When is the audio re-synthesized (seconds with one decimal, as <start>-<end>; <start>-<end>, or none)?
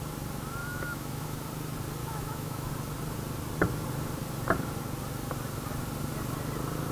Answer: 0.6-1.4; 2.0-2.7